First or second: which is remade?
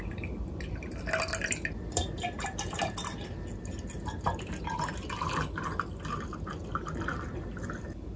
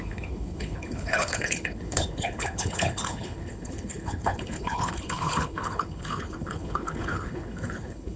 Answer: second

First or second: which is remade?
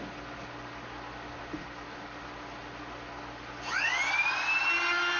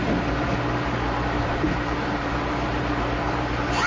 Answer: second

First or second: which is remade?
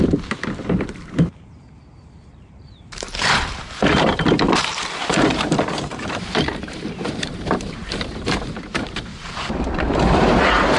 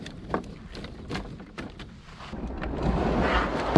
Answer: first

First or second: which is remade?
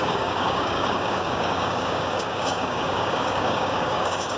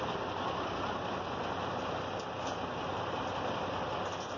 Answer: first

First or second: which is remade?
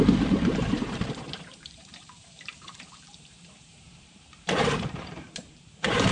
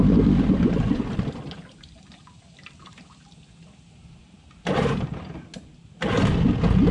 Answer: first